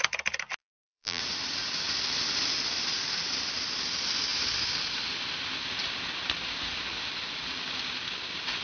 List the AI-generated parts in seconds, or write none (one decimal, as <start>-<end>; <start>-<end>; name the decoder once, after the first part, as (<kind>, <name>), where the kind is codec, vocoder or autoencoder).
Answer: 0.6-1.2 (vocoder, BigVGAN v2)